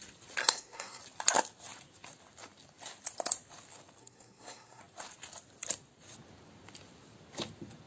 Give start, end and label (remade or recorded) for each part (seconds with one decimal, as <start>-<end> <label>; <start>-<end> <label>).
0.0-0.4 recorded; 0.4-1.0 remade; 1.0-4.0 recorded; 4.0-4.8 remade; 4.8-7.9 recorded